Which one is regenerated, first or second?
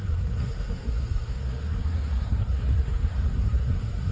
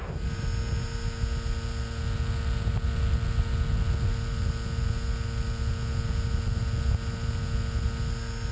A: first